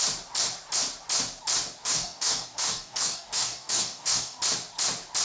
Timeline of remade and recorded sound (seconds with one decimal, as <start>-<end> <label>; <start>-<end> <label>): 0.0-1.8 recorded; 1.8-4.4 remade; 4.4-5.2 recorded